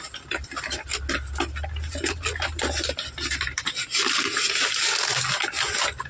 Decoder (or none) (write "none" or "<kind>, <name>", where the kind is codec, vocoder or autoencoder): none